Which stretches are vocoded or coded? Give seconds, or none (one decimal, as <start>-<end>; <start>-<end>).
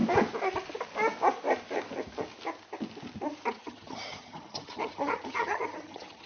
3.5-6.3